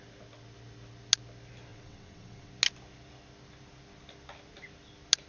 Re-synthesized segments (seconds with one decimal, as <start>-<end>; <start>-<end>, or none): 1.7-2.5